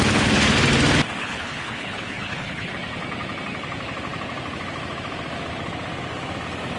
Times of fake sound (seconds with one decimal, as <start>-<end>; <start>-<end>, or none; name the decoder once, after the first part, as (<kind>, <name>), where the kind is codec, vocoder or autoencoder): 1.2-2.7 (codec, HILCodec)